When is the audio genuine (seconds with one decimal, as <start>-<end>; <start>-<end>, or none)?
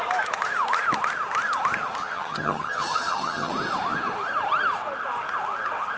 0.0-2.0; 3.5-6.0